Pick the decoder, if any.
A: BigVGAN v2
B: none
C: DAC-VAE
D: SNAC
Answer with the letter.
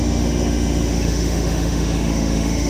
C